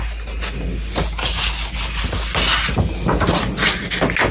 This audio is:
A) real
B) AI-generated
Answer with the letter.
A